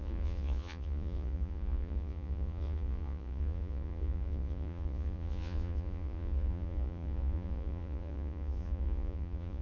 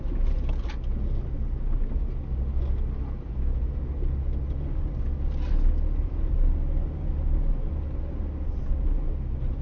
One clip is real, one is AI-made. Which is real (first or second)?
second